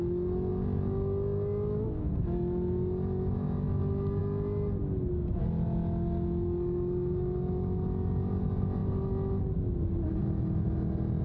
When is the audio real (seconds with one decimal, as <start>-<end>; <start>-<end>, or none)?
0.0-11.2